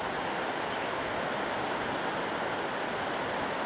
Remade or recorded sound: recorded